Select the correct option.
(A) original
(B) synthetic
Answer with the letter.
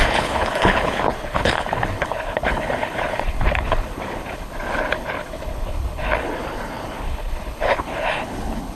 B